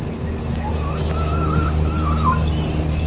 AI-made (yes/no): no